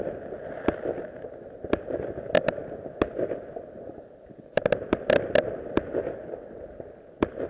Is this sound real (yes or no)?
yes